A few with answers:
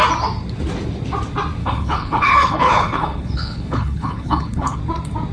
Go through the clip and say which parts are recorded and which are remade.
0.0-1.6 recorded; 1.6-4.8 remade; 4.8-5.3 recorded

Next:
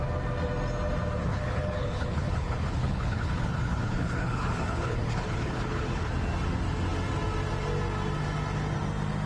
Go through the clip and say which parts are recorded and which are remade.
0.0-1.2 recorded; 1.2-6.1 remade; 6.1-9.3 recorded

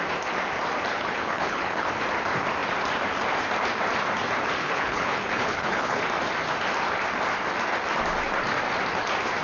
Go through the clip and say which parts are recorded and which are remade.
0.0-0.9 recorded; 0.9-1.9 remade; 1.9-4.6 recorded; 4.6-6.0 remade; 6.0-9.4 recorded

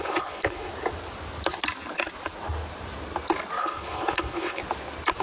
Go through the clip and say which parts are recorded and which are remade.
0.0-0.7 remade; 0.7-3.6 recorded; 3.6-4.6 remade; 4.6-5.2 recorded

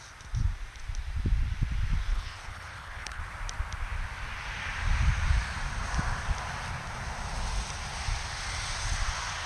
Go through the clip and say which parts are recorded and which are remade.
0.0-2.1 recorded; 2.1-3.2 remade; 3.2-9.5 recorded